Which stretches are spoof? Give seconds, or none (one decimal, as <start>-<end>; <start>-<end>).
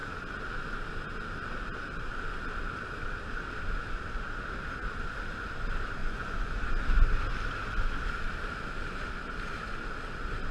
6.0-6.6